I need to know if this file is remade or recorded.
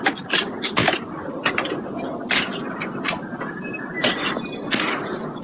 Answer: recorded